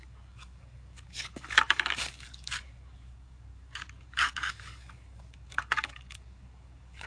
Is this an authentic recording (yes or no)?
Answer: no